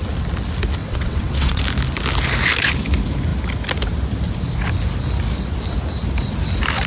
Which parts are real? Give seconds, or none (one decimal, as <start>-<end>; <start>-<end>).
0.0-0.8; 1.6-6.9